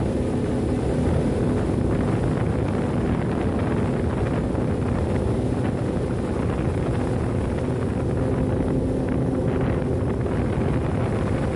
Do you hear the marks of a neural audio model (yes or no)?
no